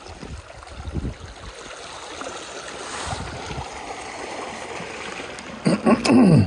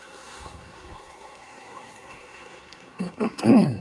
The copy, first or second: second